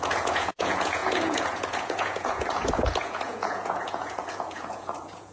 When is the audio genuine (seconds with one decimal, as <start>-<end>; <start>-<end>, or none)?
none